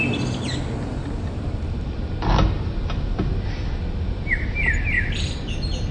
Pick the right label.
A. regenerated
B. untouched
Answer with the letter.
B